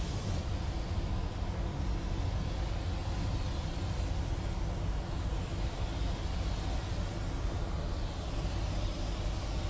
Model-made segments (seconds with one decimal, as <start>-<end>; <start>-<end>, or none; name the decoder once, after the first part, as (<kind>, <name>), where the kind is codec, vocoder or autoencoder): none